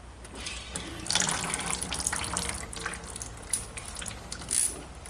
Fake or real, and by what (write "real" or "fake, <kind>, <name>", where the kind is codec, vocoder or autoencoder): fake, vocoder, BigVGAN v2